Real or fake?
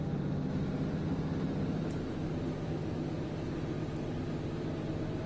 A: real